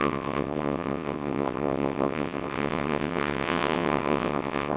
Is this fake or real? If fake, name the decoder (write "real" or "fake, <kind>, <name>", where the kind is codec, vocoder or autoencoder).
fake, vocoder, WaveNeXt